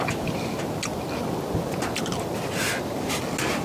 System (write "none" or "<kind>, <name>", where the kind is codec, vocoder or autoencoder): none